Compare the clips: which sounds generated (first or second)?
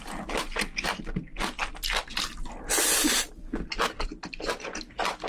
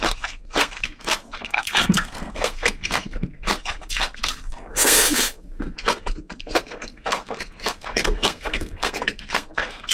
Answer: second